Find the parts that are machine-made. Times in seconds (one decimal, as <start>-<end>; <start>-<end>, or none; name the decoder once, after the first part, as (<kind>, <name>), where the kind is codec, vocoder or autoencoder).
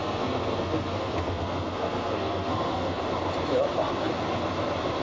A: 0.0-3.0 (codec, SNAC)